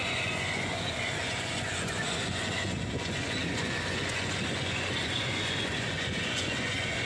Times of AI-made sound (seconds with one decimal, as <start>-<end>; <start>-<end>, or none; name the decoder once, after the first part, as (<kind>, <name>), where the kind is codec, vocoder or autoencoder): 0.0-7.1 (vocoder, Vocos)

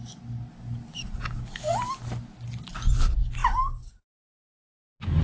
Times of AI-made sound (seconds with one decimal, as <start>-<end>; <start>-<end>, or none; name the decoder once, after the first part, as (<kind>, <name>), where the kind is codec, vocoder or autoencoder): none

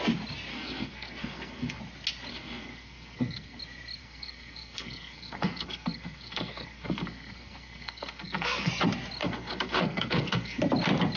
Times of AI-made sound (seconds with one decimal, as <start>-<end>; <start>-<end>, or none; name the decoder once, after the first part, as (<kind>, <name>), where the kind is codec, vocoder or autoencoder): 0.5-1.8 (codec, SNAC); 2.3-3.6; 4.0-8.7; 9.2-10.6

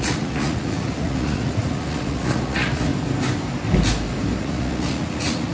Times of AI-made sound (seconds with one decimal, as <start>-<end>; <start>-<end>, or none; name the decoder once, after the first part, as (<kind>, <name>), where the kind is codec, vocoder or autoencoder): 0.0-2.9 (vocoder, Vocos); 4.4-5.5

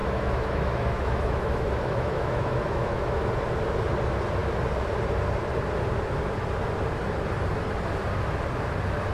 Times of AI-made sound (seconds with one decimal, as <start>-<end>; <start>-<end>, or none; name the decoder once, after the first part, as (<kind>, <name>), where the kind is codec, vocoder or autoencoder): 0.0-3.3 (autoencoder, DAC-VAE)

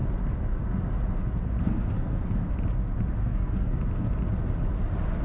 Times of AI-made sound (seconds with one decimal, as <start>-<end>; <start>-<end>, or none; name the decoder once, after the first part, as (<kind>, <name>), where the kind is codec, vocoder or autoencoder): 1.6-2.2 (codec, SNAC); 3.2-3.8